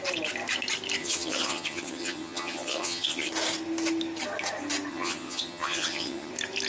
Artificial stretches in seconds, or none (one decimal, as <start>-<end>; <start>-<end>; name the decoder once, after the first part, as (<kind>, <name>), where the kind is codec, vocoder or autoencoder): 1.0-3.3 (vocoder, HiFi-GAN); 4.9-6.3